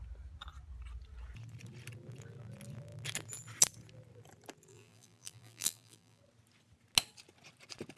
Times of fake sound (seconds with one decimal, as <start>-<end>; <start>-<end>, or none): 4.7-6.2